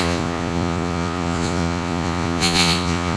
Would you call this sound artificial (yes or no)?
yes